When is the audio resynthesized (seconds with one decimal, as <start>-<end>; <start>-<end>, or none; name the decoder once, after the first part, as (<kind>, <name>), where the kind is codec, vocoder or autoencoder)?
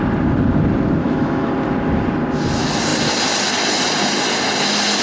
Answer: 1.0-1.5 (autoencoder, DAC-VAE)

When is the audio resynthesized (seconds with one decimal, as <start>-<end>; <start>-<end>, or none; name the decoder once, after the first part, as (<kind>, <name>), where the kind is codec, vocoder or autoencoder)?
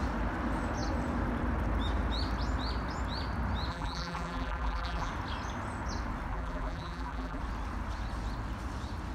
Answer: 3.7-5.1 (vocoder, BigVGAN v2); 6.3-7.4